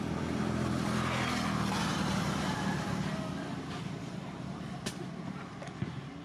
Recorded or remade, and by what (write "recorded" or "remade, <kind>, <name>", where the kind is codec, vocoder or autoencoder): remade, vocoder, BigVGAN v2